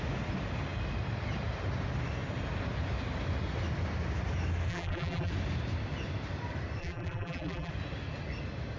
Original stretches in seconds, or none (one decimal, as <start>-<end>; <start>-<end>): 0.0-4.7; 5.3-6.8; 7.7-8.8